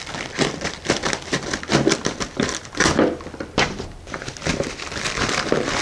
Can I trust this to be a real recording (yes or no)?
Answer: no